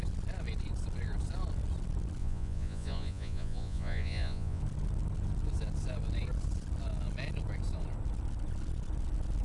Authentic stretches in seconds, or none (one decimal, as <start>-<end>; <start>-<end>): 0.0-2.2; 4.6-9.4